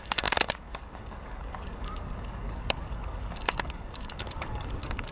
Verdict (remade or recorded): remade